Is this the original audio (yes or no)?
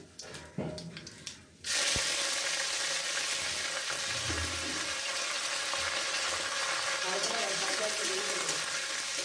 yes